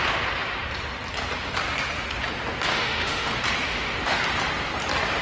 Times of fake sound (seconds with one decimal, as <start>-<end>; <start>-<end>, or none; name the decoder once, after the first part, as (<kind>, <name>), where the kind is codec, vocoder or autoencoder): 2.7-3.3 (autoencoder, DAC-VAE); 3.7-4.2